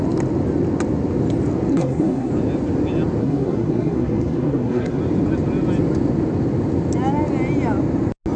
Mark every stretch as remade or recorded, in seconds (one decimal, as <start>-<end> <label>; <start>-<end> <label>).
0.0-1.7 recorded; 1.7-2.3 remade; 2.3-3.2 recorded; 3.2-5.0 remade; 5.0-8.4 recorded